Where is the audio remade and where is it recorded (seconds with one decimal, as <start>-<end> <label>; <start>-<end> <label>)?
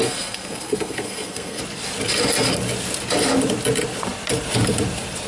0.0-1.6 remade; 1.6-5.3 recorded